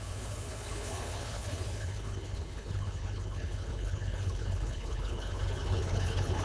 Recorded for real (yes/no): no